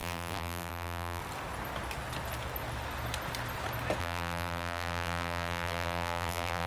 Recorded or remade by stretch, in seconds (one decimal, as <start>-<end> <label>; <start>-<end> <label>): 0.0-1.2 remade; 1.2-4.0 recorded; 4.0-6.7 remade